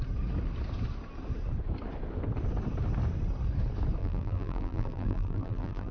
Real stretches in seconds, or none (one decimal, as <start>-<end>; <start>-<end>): 0.0-4.0